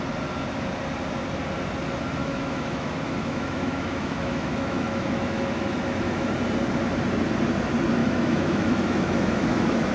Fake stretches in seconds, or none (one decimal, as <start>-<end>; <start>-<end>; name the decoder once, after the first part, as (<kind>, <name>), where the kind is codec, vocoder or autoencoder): 2.2-6.3 (autoencoder, DAC-VAE); 8.0-9.9